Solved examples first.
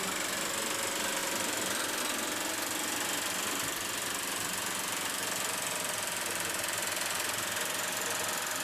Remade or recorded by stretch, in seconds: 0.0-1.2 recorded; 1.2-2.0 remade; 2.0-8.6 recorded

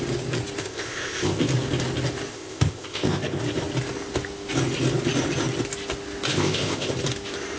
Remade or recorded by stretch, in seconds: 0.0-0.6 recorded; 0.6-1.4 remade; 1.4-2.3 recorded; 2.3-3.4 remade; 3.4-6.3 recorded; 6.3-6.9 remade; 6.9-7.6 recorded

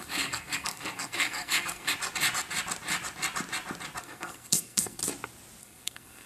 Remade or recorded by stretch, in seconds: 0.0-1.9 remade; 1.9-4.0 recorded; 4.0-5.0 remade; 5.0-5.6 recorded; 5.6-6.3 remade

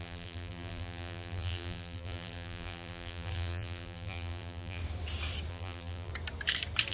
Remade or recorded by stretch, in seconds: 0.0-4.8 remade; 4.8-5.5 recorded; 5.5-6.1 remade; 6.1-6.9 recorded

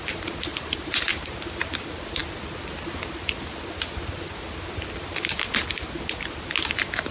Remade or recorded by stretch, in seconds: 0.0-0.5 recorded; 0.5-1.1 remade; 1.1-7.1 recorded